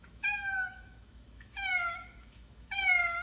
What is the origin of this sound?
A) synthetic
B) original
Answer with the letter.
A